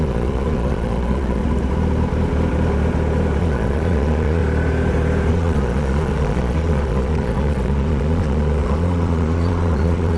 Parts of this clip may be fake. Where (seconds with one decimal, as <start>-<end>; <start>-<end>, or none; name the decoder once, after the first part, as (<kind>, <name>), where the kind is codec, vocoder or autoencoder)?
0.0-1.4 (vocoder, Vocos); 3.4-4.4; 5.3-10.2